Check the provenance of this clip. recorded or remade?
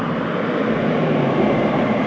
remade